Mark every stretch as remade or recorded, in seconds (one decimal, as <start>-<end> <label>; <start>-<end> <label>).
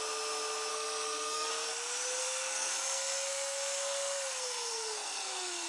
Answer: 0.0-0.7 recorded; 0.7-1.5 remade; 1.5-2.2 recorded; 2.2-5.7 remade